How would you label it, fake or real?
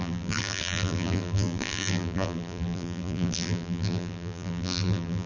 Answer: fake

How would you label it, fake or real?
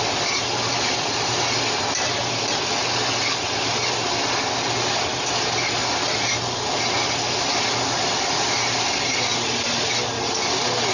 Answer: real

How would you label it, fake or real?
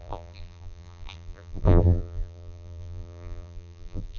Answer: fake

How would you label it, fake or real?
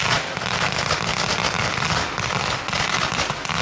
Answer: real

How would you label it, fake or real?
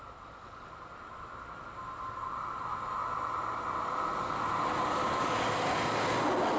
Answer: real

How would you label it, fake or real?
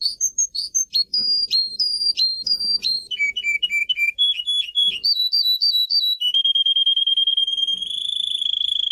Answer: fake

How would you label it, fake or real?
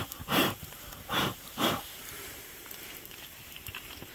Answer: fake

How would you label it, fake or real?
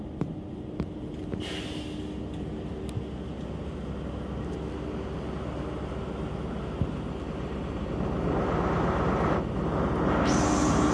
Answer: real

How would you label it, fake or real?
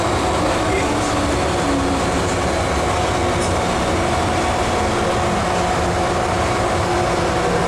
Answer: real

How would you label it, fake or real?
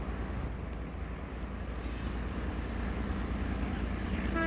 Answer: real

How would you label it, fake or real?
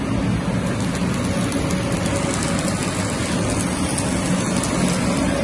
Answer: real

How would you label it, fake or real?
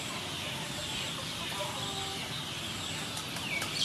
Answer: real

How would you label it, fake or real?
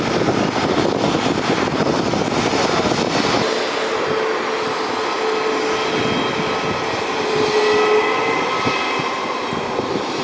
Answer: real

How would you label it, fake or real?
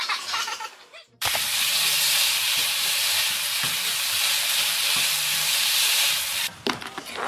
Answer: fake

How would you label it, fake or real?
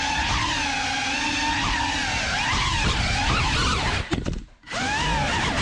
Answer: real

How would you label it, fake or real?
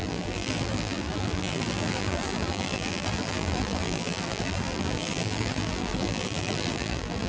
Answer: fake